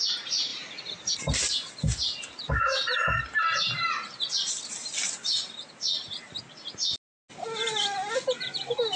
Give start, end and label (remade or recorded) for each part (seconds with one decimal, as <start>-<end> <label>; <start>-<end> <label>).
0.0-9.0 recorded